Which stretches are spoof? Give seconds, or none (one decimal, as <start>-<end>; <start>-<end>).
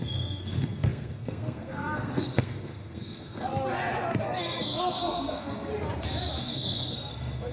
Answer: 0.0-3.5; 4.2-5.7; 6.4-7.5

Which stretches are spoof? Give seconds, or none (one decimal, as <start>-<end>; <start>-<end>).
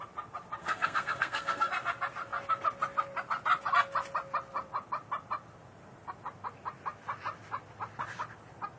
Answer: 0.6-1.7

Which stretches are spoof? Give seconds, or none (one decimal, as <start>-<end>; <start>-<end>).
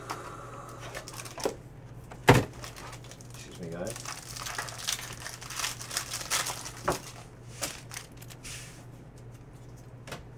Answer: none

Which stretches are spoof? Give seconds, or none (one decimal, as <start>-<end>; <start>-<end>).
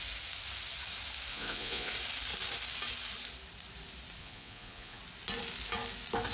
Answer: 1.3-1.9; 4.2-5.0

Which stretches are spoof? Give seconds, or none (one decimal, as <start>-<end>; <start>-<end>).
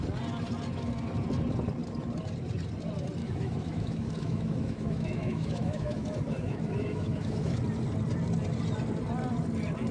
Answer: 3.2-7.6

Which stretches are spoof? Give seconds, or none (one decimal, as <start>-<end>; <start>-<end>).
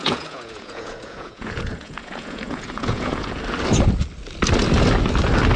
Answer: 0.0-3.4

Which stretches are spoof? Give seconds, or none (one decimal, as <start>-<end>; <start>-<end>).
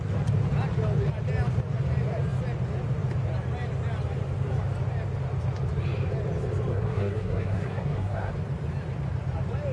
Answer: 6.7-8.3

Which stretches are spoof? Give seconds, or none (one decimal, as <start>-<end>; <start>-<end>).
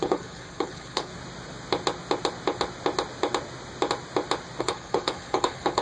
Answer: 0.0-1.1; 4.6-5.8